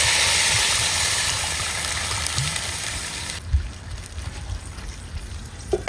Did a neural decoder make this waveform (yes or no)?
no